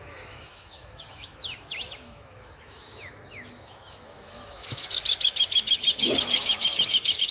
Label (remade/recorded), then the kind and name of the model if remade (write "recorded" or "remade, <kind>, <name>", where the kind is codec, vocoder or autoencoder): remade, autoencoder, DAC-VAE